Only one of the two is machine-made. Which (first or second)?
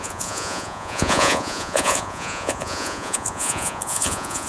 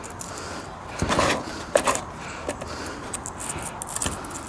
first